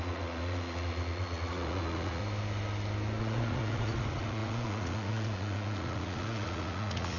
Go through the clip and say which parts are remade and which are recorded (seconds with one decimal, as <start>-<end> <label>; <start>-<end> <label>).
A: 0.0-2.2 remade; 2.2-3.2 recorded; 3.2-7.2 remade